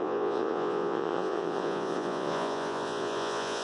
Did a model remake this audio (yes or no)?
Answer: yes